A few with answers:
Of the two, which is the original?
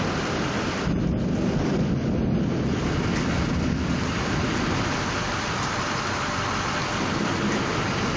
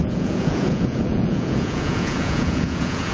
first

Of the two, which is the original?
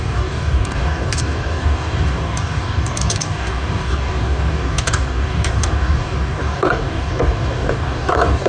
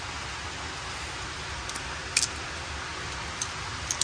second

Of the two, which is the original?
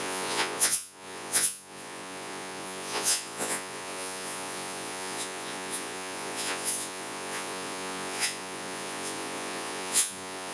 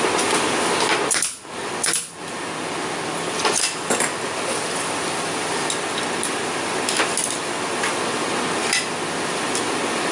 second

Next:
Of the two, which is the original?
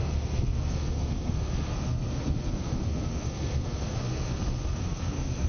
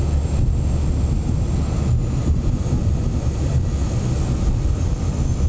second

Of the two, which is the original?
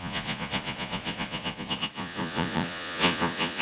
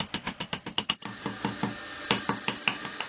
second